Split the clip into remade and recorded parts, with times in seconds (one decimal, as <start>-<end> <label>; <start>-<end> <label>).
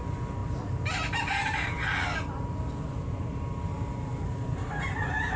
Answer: 0.0-5.4 recorded